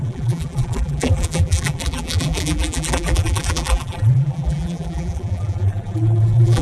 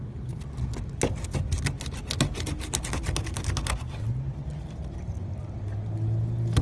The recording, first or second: second